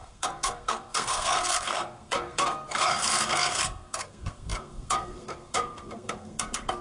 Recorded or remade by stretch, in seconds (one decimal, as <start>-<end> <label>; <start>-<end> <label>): 0.0-6.8 remade